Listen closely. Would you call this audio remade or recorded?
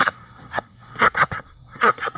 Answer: remade